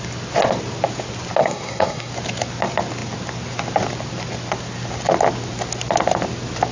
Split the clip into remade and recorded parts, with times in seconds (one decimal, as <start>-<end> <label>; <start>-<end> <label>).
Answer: 0.0-1.4 recorded; 1.4-2.1 remade; 2.1-6.7 recorded